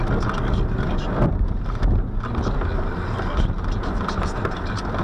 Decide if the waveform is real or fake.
real